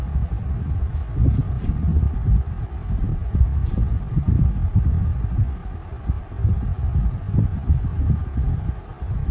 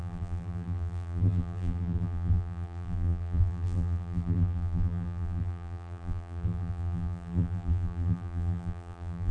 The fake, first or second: second